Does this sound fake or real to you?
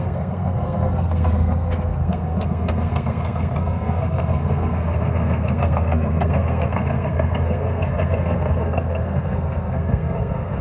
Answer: fake